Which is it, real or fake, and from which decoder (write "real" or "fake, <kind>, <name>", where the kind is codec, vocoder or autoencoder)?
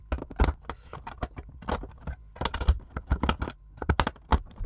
real